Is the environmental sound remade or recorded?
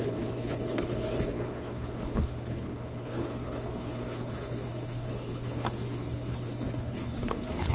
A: remade